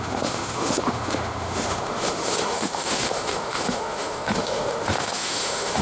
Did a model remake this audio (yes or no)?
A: yes